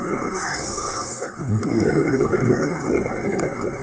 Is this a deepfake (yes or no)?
yes